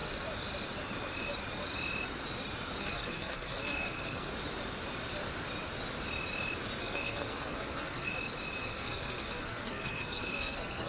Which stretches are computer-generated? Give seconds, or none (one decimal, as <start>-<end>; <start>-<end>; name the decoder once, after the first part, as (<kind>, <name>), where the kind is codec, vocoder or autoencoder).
2.8-4.3 (codec, SNAC); 6.8-8.1; 8.6-10.9

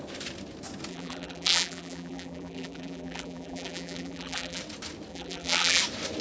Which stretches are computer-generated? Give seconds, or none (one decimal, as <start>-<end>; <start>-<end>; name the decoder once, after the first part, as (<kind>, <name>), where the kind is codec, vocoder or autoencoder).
0.9-4.6 (vocoder, BigVGAN v2); 5.1-5.8

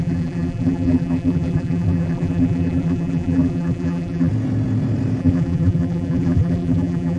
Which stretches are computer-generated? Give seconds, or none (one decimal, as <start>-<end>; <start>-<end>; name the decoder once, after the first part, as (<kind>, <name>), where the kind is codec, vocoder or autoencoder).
0.0-4.3 (vocoder, BigVGAN v2); 5.2-7.2

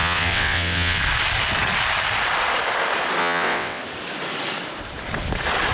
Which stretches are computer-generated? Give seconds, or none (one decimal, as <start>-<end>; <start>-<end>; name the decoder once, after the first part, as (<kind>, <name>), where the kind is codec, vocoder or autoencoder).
0.0-1.0 (vocoder, WaveNeXt); 3.2-3.8

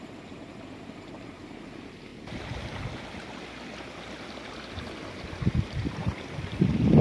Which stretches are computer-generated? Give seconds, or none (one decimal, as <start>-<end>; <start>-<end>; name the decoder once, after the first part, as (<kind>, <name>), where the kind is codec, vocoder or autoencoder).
none

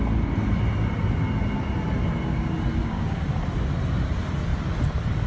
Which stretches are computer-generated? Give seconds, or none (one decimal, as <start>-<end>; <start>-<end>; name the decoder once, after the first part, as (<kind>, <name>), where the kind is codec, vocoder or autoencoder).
2.8-3.3 (codec, DAC)

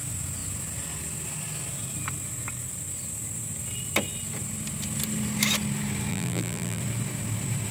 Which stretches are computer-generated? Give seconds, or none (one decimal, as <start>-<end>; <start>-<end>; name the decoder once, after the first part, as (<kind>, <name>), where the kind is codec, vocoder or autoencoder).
6.1-6.8 (vocoder, BigVGAN v2)

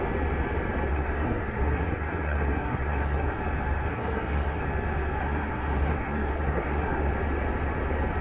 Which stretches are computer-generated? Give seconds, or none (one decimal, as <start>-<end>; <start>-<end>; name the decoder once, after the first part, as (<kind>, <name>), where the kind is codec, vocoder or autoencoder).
0.9-3.4 (codec, SNAC); 3.9-4.6; 5.2-7.1